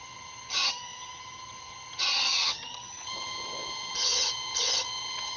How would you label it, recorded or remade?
remade